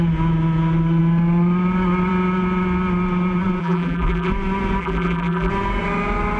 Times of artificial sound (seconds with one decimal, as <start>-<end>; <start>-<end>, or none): 3.6-4.3; 4.8-5.5